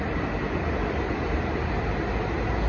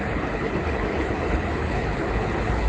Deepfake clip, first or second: second